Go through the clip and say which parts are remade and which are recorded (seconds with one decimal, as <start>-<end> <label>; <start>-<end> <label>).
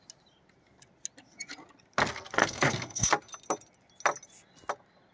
0.0-2.4 recorded; 2.4-3.1 remade; 3.1-5.1 recorded